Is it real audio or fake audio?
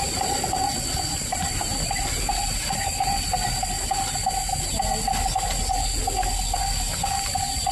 real